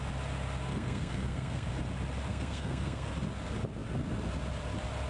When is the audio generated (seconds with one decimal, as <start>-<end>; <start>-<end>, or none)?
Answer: 0.7-1.7; 2.3-3.1

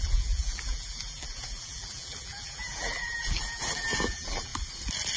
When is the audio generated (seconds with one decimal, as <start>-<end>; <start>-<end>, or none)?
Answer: 0.0-4.5

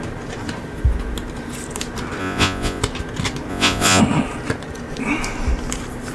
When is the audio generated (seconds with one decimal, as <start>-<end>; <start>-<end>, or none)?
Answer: 2.2-2.8; 3.5-4.0

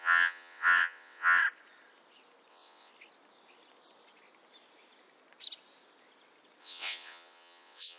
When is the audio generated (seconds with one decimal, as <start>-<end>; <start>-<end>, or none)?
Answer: 0.0-1.4; 2.5-2.9; 6.6-8.0

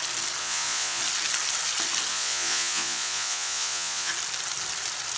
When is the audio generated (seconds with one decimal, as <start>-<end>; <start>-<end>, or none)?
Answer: 0.4-1.0; 2.1-4.1